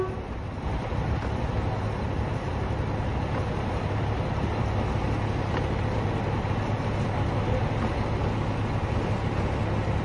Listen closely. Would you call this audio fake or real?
real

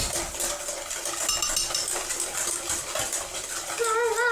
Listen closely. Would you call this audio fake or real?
real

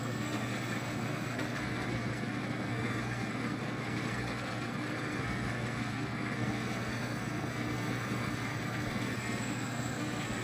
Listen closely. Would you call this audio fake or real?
fake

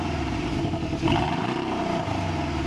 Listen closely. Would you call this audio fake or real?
fake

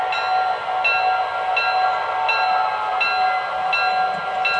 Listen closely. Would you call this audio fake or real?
real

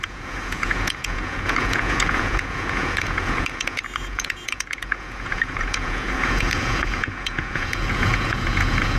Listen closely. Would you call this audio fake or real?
fake